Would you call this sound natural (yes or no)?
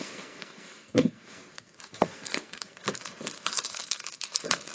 no